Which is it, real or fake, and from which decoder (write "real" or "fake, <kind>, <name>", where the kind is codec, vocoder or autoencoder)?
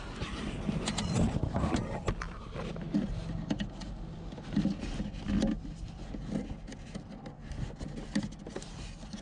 real